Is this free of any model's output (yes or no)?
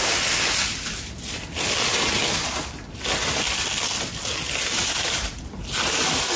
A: yes